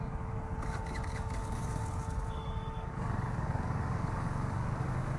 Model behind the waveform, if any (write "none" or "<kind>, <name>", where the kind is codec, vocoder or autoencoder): codec, DAC